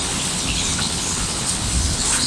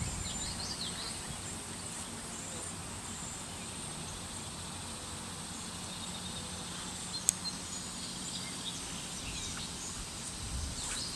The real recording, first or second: second